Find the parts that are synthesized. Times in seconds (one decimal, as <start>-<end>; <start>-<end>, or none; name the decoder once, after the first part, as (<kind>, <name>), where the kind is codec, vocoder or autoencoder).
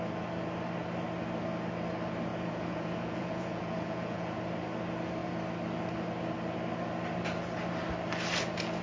2.3-4.4 (vocoder, Vocos)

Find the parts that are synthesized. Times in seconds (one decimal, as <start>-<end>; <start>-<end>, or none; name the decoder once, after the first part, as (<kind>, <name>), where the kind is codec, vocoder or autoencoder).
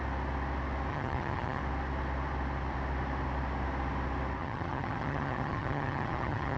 0.9-1.6 (vocoder, HiFi-GAN); 4.4-6.6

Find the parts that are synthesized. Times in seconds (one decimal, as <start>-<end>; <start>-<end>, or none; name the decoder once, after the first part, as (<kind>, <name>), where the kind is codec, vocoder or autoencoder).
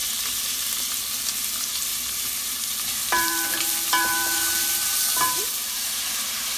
1.9-5.9 (vocoder, BigVGAN v2)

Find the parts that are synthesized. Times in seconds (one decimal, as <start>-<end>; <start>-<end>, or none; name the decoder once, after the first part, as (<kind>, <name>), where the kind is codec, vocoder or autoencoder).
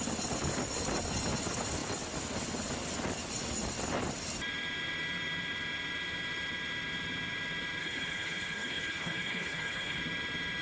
7.8-10.0 (codec, HILCodec)